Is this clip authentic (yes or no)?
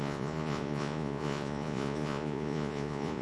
no